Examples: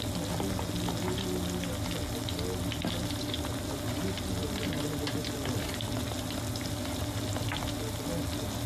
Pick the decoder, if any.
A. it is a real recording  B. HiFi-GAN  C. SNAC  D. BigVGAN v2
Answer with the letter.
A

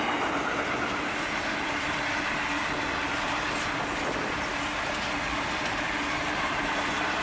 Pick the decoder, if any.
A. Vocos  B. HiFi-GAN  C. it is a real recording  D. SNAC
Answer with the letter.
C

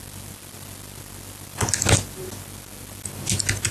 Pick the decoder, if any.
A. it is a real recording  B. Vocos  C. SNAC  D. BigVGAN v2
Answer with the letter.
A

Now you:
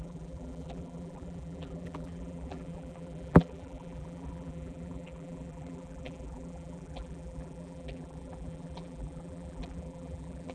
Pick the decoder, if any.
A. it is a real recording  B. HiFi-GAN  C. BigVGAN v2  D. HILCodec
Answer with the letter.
C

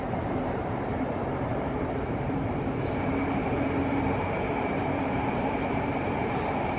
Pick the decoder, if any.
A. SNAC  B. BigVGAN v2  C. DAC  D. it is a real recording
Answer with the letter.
B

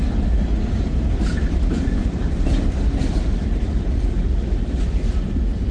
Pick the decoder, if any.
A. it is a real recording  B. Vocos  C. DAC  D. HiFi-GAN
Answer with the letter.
A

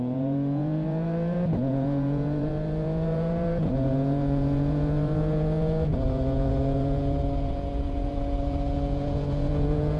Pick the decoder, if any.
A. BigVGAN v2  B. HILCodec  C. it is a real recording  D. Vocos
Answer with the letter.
D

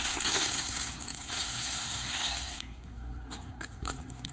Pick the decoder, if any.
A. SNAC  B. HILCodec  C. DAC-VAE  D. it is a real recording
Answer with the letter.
A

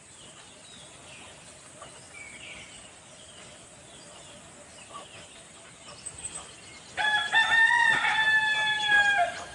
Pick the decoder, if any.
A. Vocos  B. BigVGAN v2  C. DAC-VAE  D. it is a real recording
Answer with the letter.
D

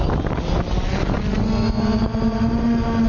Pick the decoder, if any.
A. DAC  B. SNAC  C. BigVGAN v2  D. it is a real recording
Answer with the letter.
D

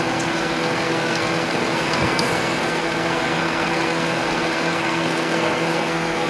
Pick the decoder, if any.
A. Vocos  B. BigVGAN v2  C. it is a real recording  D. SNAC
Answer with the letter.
D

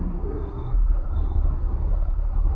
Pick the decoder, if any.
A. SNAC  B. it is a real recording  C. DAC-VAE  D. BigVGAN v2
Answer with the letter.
A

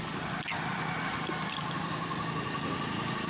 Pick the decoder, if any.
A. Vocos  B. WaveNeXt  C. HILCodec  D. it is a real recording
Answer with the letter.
D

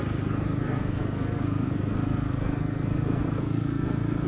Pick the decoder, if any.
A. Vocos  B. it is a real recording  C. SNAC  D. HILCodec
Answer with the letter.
C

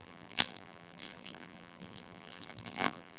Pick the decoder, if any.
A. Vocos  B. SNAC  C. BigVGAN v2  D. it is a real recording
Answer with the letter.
C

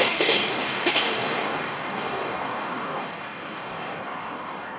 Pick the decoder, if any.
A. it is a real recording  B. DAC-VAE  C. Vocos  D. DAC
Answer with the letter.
D